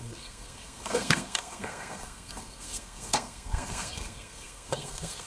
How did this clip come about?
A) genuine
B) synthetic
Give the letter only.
B